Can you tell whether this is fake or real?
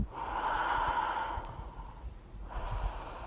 fake